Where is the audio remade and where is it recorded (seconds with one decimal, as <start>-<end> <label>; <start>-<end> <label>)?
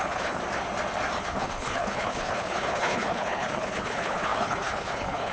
0.0-0.4 remade; 0.4-1.2 recorded; 1.2-5.3 remade